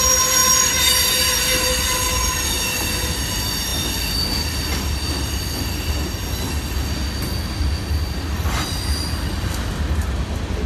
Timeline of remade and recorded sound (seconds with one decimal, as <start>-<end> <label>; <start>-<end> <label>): 0.0-10.7 recorded